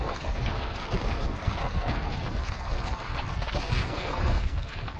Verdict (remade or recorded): remade